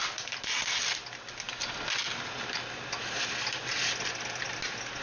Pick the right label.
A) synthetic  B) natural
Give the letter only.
B